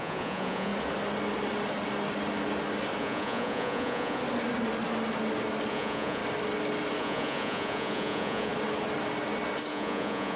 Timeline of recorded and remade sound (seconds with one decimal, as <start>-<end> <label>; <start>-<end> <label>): 0.0-0.7 remade; 0.7-3.0 recorded; 3.0-4.2 remade; 4.2-5.7 recorded; 5.7-6.2 remade; 6.2-7.0 recorded; 7.0-8.5 remade; 8.5-9.7 recorded; 9.7-10.4 remade